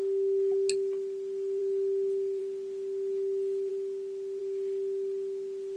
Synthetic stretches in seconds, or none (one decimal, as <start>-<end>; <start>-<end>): none